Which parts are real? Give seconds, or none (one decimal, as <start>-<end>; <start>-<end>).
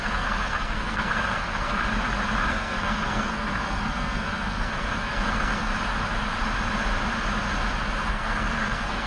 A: 1.8-2.5; 5.7-8.1